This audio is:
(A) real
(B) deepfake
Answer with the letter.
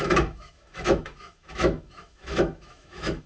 B